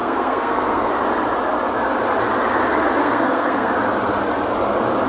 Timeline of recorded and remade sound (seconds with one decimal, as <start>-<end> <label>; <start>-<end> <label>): 0.0-0.9 remade; 0.9-3.0 recorded; 3.0-3.7 remade; 3.7-5.1 recorded